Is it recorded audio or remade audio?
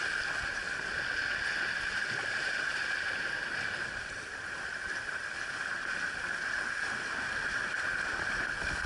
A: recorded